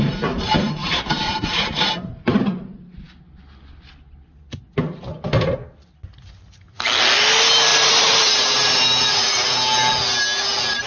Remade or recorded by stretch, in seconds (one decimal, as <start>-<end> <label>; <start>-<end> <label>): 0.0-0.8 recorded; 0.8-3.0 remade; 3.0-7.7 recorded; 7.7-9.5 remade; 9.5-10.9 recorded